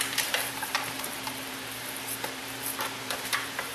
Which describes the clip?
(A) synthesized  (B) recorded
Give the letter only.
A